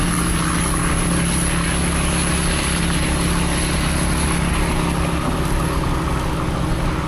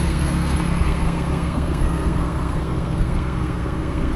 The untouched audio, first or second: first